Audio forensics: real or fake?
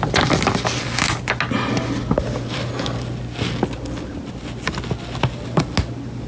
real